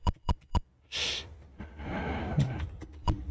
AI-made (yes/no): yes